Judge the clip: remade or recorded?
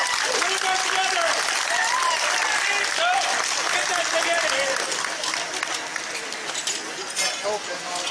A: recorded